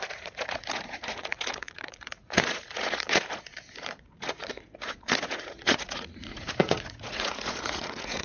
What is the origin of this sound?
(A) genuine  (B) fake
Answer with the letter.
B